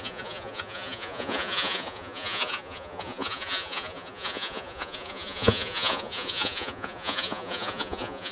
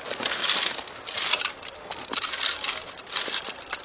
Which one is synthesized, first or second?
first